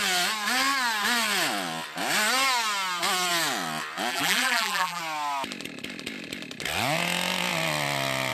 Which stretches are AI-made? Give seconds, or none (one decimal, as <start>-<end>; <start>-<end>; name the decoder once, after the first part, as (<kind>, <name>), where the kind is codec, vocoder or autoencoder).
4.1-5.0 (vocoder, BigVGAN v2)